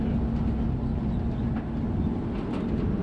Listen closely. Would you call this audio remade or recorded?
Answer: recorded